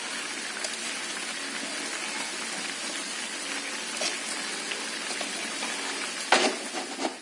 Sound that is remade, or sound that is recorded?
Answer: recorded